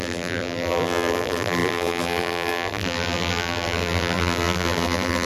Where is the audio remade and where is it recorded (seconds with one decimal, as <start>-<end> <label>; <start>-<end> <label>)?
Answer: 0.0-5.3 remade